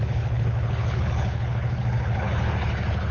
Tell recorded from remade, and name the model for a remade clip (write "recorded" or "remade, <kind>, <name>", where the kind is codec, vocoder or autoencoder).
remade, codec, HILCodec